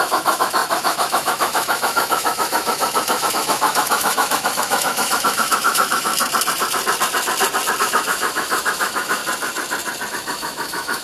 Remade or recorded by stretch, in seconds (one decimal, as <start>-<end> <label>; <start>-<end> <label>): 0.0-6.1 remade; 6.1-7.8 recorded; 7.8-9.2 remade; 9.2-10.1 recorded; 10.1-11.0 remade